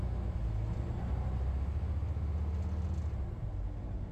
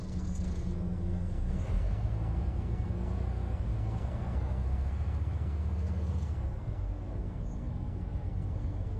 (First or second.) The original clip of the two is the first